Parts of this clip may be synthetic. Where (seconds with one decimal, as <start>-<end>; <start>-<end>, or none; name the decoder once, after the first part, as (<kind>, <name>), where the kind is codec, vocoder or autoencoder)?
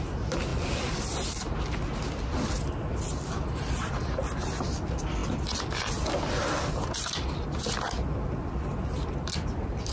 none